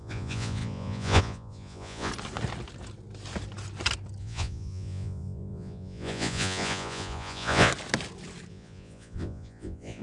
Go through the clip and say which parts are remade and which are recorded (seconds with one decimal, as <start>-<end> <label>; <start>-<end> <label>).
0.0-2.1 remade; 2.1-4.2 recorded; 4.2-7.7 remade; 7.7-8.5 recorded; 8.5-10.0 remade